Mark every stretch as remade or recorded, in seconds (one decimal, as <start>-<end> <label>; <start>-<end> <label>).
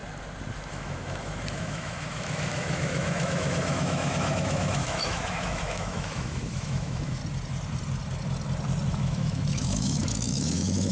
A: 0.0-0.7 recorded; 0.7-7.2 remade; 7.2-8.9 recorded; 8.9-10.9 remade